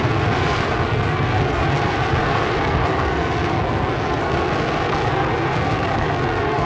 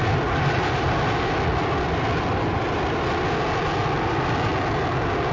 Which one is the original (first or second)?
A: second